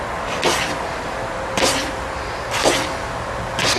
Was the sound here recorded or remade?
recorded